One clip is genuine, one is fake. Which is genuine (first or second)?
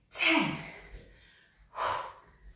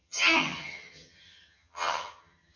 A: first